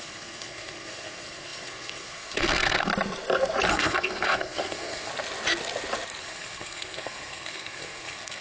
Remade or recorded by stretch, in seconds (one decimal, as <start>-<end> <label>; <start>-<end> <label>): 0.0-2.9 remade; 2.9-3.7 recorded; 3.7-5.1 remade; 5.1-6.2 recorded; 6.2-8.4 remade